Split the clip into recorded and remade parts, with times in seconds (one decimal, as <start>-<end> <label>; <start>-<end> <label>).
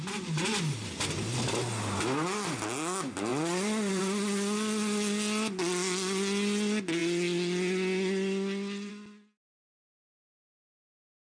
0.0-11.3 recorded